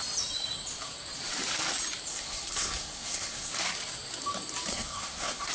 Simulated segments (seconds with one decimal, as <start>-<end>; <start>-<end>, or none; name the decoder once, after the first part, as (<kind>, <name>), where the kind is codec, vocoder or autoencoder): 2.1-3.5 (codec, SNAC); 4.7-5.5